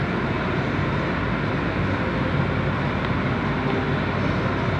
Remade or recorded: recorded